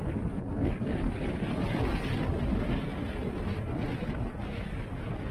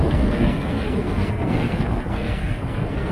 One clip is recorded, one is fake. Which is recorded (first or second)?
first